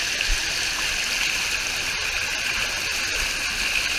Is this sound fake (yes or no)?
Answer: no